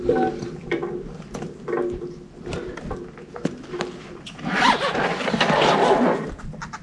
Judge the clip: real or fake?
fake